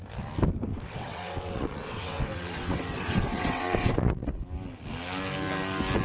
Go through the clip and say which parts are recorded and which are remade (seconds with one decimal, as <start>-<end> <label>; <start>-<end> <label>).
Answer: 0.0-0.7 recorded; 0.7-4.3 remade; 4.3-6.0 recorded